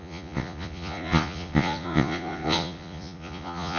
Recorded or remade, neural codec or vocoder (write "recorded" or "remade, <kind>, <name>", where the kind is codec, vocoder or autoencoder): remade, vocoder, Vocos